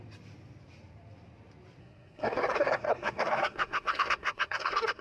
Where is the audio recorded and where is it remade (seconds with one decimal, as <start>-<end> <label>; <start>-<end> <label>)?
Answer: 0.0-1.8 recorded; 1.8-5.0 remade